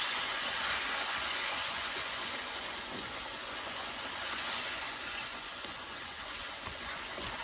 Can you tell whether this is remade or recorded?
remade